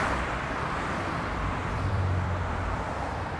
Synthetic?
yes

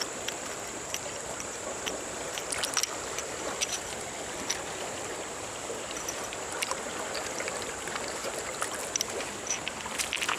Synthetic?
yes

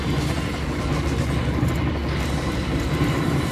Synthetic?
no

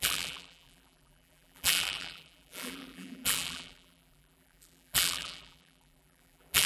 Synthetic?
yes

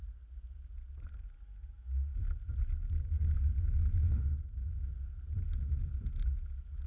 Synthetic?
no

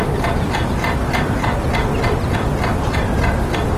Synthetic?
no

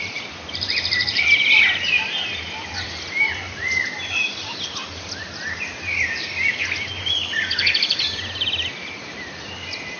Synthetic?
yes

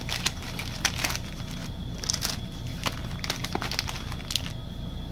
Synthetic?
no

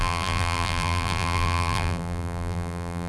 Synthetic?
yes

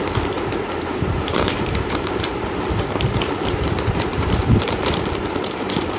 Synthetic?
yes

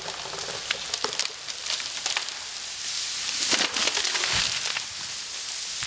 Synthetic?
no